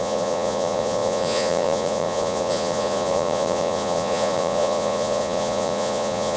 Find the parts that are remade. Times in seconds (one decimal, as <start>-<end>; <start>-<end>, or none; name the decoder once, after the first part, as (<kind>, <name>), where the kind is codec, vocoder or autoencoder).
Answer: 0.0-6.4 (vocoder, Vocos)